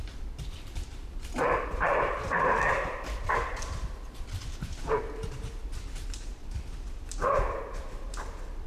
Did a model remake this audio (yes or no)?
yes